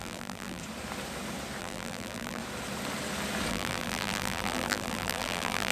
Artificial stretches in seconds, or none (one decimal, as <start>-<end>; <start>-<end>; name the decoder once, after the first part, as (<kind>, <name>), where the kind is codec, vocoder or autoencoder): 0.0-0.6 (vocoder, BigVGAN v2); 1.6-2.4; 3.5-5.7